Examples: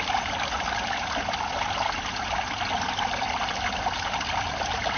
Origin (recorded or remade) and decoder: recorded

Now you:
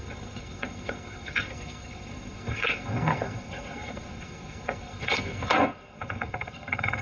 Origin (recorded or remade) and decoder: remade, codec, SNAC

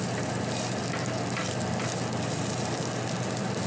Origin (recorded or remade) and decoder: recorded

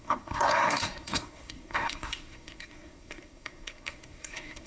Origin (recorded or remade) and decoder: remade, codec, SNAC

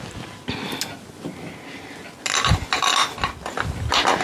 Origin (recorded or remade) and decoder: recorded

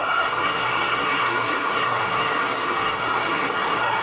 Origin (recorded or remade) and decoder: remade, codec, SNAC